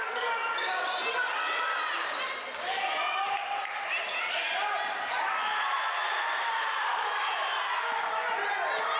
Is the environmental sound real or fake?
real